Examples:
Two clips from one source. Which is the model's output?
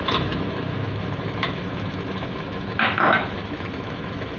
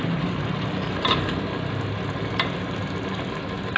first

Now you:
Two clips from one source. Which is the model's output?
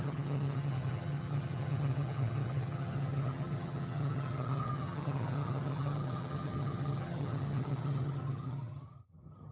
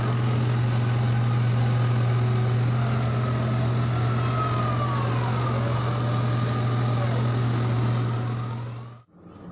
first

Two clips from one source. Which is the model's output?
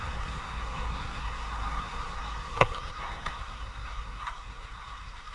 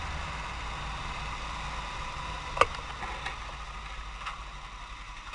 first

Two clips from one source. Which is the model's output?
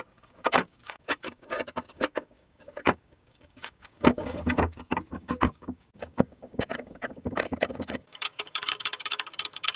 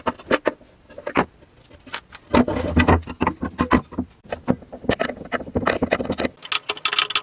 first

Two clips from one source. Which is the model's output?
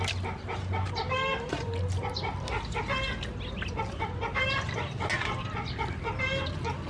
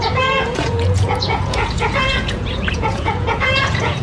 second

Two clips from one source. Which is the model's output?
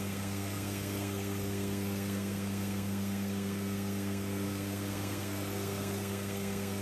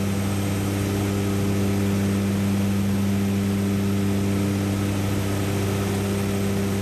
first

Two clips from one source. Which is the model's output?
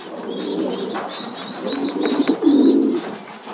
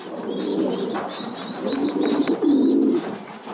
second